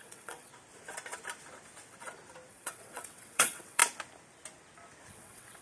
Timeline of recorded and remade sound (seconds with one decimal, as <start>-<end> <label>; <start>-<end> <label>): 0.0-0.5 remade; 0.5-2.5 recorded; 2.5-3.8 remade; 3.8-5.1 recorded; 5.1-5.6 remade